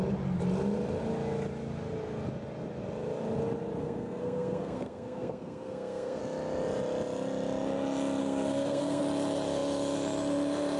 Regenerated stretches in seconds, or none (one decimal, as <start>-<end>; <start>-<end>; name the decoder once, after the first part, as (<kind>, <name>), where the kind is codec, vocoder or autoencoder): 3.8-6.2 (codec, SNAC); 8.2-9.0